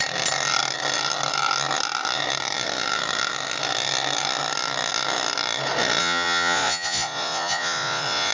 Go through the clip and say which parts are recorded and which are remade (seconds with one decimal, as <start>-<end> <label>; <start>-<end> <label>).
0.0-6.0 recorded; 6.0-8.3 remade